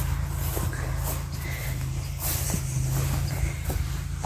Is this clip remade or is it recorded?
recorded